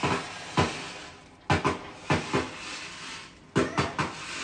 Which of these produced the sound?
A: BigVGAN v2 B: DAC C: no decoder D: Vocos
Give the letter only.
C